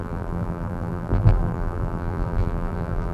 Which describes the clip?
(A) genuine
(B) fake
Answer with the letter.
B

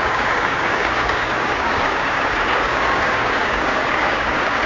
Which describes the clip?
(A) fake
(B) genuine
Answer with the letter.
A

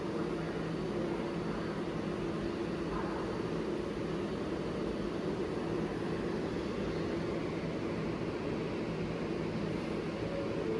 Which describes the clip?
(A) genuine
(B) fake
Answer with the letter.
A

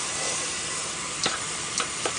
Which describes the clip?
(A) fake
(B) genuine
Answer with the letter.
B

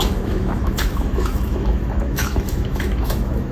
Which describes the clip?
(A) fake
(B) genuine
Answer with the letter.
A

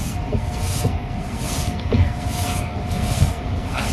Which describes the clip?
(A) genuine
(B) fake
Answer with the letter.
B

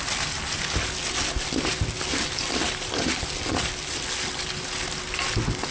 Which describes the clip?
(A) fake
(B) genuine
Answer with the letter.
B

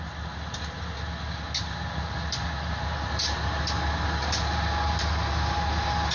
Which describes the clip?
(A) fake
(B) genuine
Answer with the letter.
B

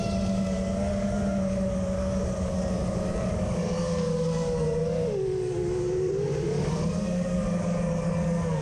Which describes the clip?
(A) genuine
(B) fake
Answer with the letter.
B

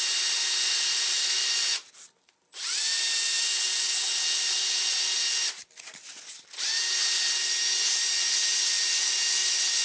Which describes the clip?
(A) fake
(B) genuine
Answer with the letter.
B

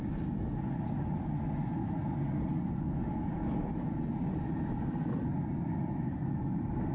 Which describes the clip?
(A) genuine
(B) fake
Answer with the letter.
A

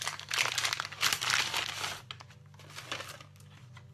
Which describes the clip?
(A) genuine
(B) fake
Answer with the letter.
A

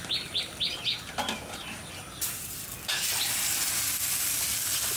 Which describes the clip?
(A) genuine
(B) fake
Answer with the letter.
A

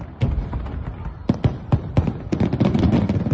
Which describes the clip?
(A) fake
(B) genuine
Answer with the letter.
B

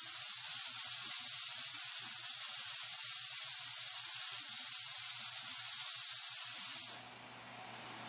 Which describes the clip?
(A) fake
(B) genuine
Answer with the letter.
B